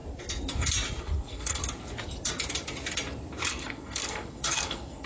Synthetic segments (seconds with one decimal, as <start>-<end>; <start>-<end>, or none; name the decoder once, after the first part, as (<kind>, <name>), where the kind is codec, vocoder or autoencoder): 1.0-1.6 (codec, SNAC); 3.5-5.1